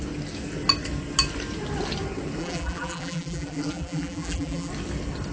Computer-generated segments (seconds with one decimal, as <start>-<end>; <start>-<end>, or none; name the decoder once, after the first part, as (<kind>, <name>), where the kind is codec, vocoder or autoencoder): 2.4-4.7 (vocoder, BigVGAN v2)